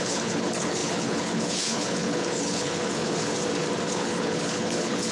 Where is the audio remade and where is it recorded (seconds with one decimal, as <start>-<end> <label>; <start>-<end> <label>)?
0.0-3.3 remade; 3.3-3.9 recorded; 3.9-5.1 remade